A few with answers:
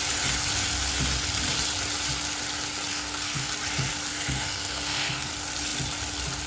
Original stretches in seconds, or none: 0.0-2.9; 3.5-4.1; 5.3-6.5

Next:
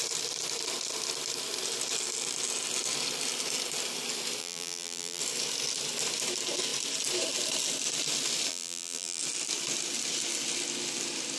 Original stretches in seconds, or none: 0.0-4.4; 5.2-8.5; 9.2-11.4

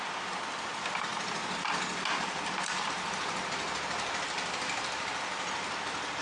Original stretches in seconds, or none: 0.0-6.2

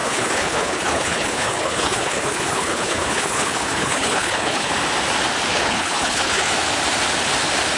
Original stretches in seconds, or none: 4.7-5.5; 6.5-7.8

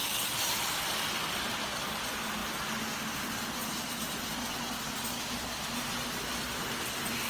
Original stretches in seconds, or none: 0.6-3.6; 4.3-7.3

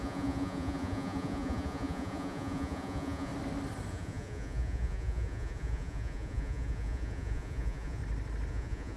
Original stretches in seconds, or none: 3.3-3.9; 8.0-8.5

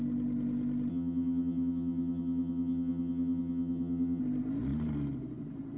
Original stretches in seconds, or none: 0.0-0.9; 4.2-5.8

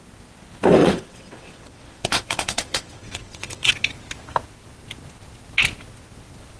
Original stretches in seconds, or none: 0.0-0.8; 3.7-6.6